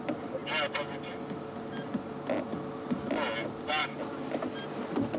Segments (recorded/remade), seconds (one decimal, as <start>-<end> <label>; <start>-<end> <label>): 0.0-0.4 recorded; 0.4-1.9 remade; 1.9-2.5 recorded; 2.5-3.1 remade; 3.1-5.2 recorded